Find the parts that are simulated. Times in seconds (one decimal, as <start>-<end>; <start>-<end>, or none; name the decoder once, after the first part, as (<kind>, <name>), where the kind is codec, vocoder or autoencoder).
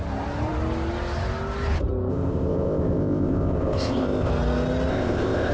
2.1-4.3 (codec, ZipCodec); 4.9-5.5